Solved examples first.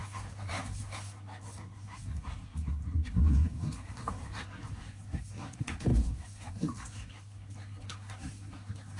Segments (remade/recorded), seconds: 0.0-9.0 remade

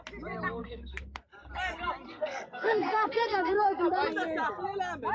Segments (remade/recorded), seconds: 0.0-0.6 recorded; 0.6-1.2 remade; 1.2-2.1 recorded; 2.1-3.8 remade; 3.8-5.1 recorded

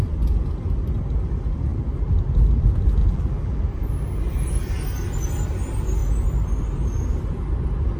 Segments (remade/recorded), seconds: 0.0-3.0 recorded; 3.0-3.6 remade; 3.6-8.0 recorded

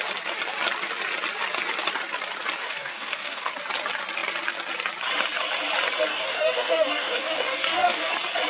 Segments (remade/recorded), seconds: 0.0-2.6 recorded; 2.6-3.5 remade; 3.5-6.1 recorded; 6.1-8.1 remade; 8.1-8.5 recorded

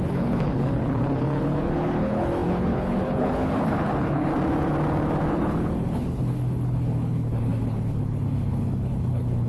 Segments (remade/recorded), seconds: 0.0-4.3 remade; 4.3-5.3 recorded; 5.3-9.5 remade